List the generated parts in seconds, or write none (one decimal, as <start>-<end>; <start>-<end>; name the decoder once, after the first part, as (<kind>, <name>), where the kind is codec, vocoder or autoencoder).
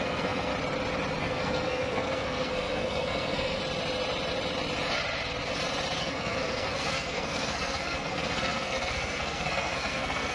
0.0-0.5 (codec, SNAC); 1.2-3.6; 6.0-10.3